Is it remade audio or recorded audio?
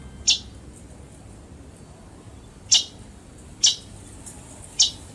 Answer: recorded